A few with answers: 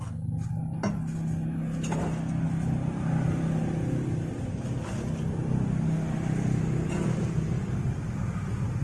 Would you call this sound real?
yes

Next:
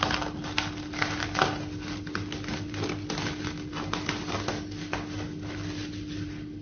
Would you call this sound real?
yes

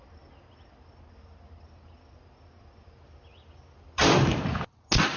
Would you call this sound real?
yes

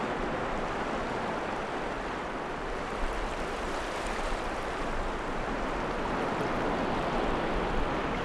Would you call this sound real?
yes